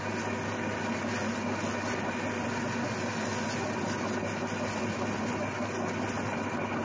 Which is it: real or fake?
real